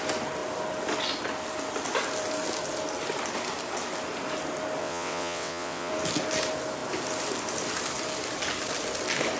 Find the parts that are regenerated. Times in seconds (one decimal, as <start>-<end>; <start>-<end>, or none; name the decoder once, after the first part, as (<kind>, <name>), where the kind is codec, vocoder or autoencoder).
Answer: 4.8-5.9 (vocoder, WaveNeXt)